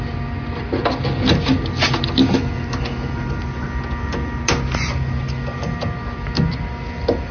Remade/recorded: recorded